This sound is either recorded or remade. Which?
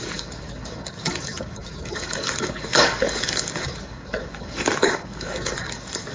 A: remade